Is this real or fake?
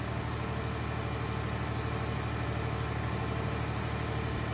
real